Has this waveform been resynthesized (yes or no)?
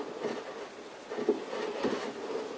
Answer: no